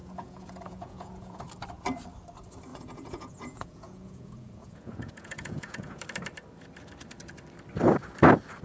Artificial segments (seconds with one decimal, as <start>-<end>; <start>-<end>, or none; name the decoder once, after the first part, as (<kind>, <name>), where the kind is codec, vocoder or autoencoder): 0.0-1.4 (vocoder, Vocos); 2.7-6.0